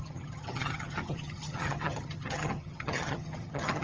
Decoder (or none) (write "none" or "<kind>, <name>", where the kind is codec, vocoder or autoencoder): vocoder, HiFi-GAN